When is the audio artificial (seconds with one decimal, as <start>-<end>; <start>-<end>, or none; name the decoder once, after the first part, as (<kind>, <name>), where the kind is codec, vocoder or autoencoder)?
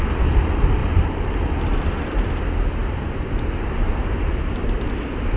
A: 0.8-1.4 (vocoder, BigVGAN v2); 2.8-5.4